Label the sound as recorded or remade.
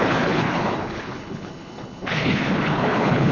remade